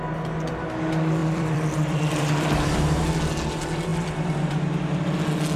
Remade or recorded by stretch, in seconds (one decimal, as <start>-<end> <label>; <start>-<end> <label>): 0.0-1.2 recorded; 1.2-3.0 remade; 3.0-5.6 recorded